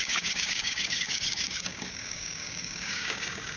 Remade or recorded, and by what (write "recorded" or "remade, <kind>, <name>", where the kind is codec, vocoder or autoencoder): remade, codec, DAC